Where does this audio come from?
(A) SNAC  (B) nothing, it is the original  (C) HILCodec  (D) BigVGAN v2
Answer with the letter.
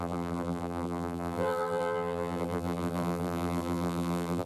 D